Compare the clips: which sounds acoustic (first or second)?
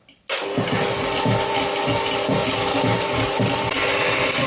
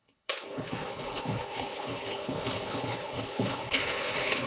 first